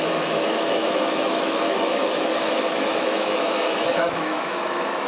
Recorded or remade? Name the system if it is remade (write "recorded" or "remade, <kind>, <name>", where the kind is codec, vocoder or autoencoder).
remade, autoencoder, DAC-VAE